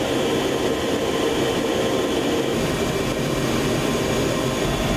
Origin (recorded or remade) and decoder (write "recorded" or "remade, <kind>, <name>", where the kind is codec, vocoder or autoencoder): recorded